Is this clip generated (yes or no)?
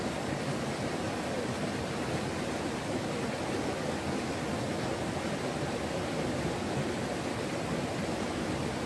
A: no